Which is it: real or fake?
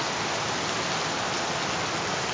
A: real